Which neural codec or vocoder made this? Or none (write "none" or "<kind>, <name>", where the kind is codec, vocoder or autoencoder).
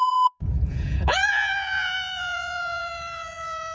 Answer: vocoder, Vocos